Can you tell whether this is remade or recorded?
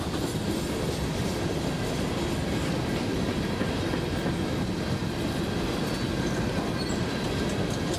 recorded